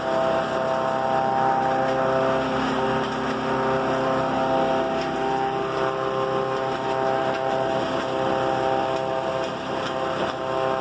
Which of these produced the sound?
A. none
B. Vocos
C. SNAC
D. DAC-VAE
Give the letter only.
A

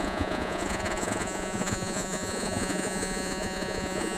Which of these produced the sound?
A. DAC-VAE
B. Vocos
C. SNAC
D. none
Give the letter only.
B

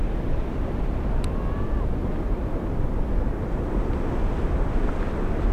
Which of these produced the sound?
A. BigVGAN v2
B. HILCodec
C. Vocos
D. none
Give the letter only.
D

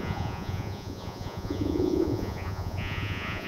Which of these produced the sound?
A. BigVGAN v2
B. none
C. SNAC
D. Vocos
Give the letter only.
D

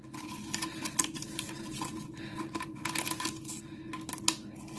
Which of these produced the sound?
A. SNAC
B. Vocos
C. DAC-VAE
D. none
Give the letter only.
D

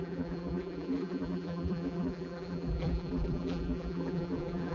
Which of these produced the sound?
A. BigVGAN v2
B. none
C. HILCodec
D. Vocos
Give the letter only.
A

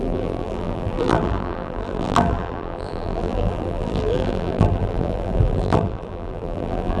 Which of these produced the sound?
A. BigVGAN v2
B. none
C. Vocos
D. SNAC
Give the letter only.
A